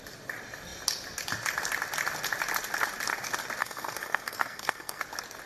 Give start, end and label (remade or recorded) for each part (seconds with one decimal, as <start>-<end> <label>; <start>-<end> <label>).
0.0-3.6 recorded; 3.6-5.0 remade; 5.0-5.5 recorded